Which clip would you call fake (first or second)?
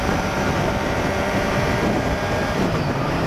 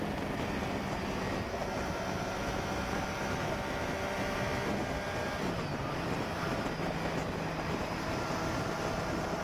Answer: first